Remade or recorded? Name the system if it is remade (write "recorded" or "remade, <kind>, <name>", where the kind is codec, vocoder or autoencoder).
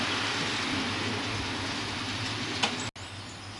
recorded